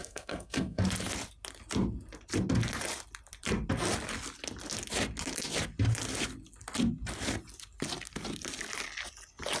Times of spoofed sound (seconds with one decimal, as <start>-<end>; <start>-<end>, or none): 0.0-0.8